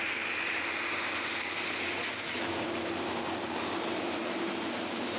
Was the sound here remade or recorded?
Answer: remade